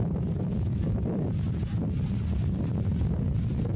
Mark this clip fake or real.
real